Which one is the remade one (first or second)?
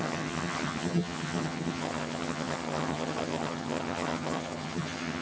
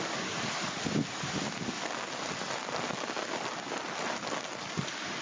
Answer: first